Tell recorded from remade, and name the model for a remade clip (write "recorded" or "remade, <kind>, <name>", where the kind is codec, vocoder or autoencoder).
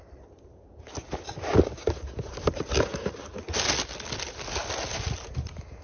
recorded